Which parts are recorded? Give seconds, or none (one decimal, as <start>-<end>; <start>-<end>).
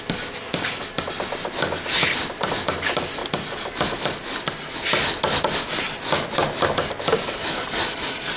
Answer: 0.0-8.4